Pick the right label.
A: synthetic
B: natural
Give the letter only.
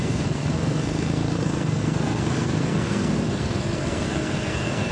A